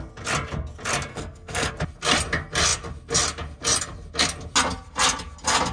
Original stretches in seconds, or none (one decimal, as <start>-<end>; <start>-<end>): 0.0-1.1; 1.7-5.7